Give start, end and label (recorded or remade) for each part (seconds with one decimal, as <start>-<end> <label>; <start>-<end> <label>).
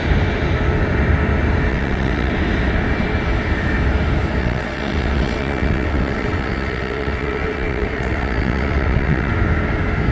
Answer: 0.0-1.7 recorded; 1.7-2.3 remade; 2.3-4.4 recorded; 4.4-9.3 remade; 9.3-10.1 recorded